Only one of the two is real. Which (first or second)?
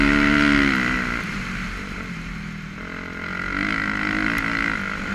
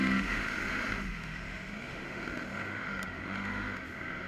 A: first